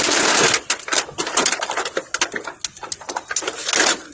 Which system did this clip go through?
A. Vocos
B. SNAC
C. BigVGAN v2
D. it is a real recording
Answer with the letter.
C